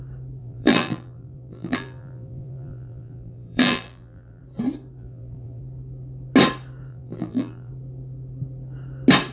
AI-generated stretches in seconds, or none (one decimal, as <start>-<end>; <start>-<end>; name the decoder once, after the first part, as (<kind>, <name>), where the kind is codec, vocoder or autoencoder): 0.4-4.4 (vocoder, BigVGAN v2); 5.0-5.6; 6.9-7.7